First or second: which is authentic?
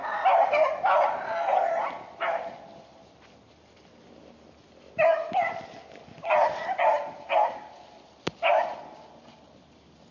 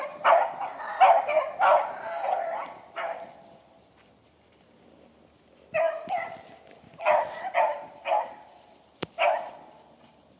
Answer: first